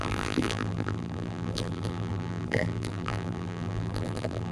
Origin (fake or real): fake